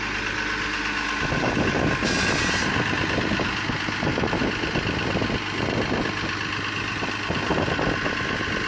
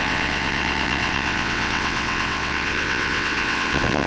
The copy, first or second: second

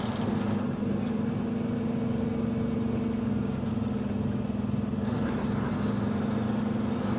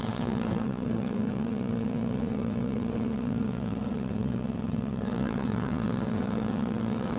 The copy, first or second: second